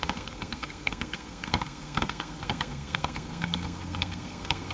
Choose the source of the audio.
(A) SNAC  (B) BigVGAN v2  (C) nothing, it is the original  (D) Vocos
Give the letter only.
A